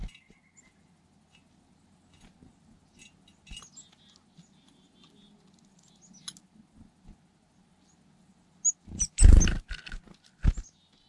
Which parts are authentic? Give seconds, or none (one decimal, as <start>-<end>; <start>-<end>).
0.0-11.1